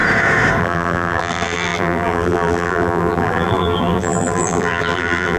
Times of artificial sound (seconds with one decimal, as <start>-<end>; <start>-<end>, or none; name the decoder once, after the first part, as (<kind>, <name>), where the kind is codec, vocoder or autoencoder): 0.6-5.4 (vocoder, BigVGAN v2)